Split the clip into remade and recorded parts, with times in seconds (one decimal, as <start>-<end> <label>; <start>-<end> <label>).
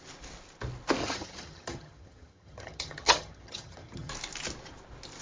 0.0-1.0 recorded; 1.0-4.1 remade; 4.1-5.2 recorded